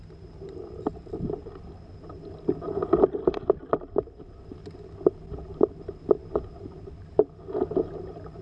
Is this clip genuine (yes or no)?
yes